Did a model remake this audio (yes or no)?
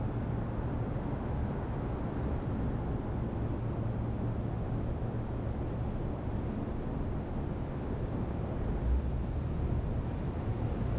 no